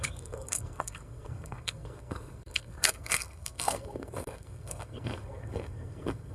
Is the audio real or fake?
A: fake